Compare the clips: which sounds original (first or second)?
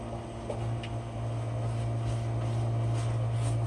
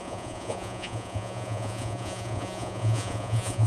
first